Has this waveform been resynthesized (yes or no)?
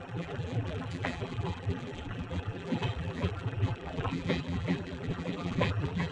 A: yes